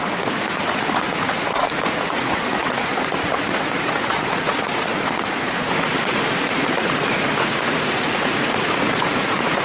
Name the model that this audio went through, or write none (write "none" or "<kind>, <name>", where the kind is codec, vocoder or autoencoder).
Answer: vocoder, Vocos